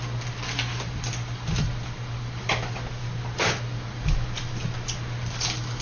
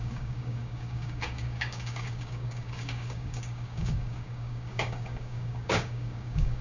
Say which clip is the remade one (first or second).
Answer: second